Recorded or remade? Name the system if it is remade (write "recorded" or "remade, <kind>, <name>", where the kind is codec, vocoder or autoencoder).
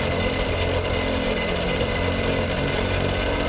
recorded